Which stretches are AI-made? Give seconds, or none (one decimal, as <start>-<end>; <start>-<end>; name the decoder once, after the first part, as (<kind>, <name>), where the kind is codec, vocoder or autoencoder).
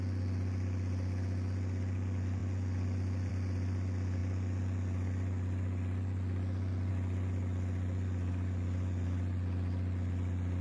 none